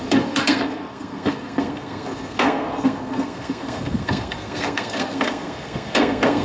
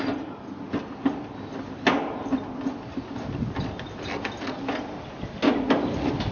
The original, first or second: second